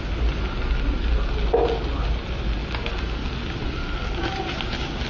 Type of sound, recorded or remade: recorded